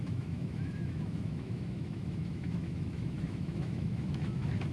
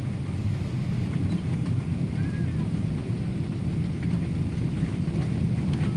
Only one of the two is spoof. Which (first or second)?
first